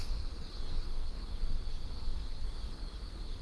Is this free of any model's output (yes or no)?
no